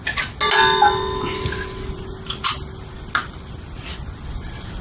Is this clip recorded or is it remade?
recorded